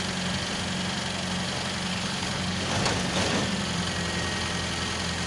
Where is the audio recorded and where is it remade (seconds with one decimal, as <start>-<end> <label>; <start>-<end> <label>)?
0.0-1.9 recorded; 1.9-2.7 remade; 2.7-5.3 recorded